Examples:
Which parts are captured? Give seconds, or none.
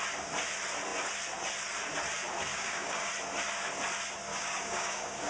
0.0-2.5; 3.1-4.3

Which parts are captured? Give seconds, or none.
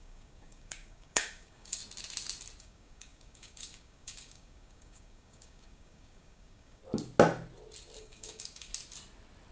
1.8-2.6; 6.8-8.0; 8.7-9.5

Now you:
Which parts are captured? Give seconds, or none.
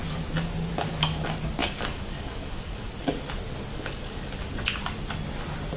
0.0-1.6; 2.9-3.7; 4.3-5.8